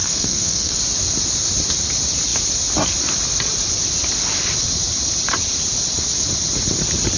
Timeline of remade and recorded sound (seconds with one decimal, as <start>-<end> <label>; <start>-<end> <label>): 0.0-0.8 remade; 0.8-7.2 recorded